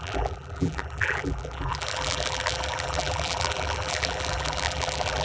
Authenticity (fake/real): fake